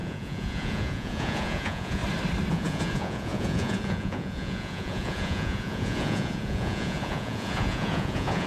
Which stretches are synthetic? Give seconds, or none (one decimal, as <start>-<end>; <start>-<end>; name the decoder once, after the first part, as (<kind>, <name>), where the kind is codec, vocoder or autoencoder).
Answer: 0.0-2.0 (vocoder, Vocos); 2.5-8.5